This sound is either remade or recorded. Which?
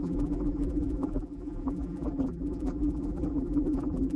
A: remade